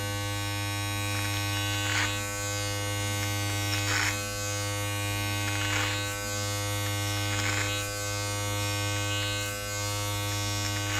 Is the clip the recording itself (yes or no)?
yes